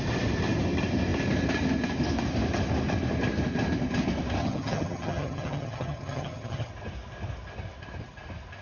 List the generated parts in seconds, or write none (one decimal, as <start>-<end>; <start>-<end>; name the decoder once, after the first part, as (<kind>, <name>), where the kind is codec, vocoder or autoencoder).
4.4-6.7 (vocoder, HiFi-GAN)